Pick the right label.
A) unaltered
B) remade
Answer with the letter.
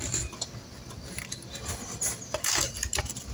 A